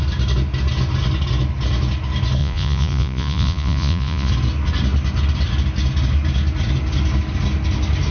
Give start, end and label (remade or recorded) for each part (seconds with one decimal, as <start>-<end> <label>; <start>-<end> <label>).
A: 0.0-2.4 recorded; 2.4-4.3 remade; 4.3-8.1 recorded